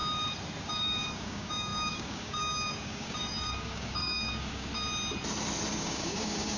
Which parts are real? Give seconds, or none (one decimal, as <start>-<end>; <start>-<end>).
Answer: 0.0-0.6; 4.7-5.7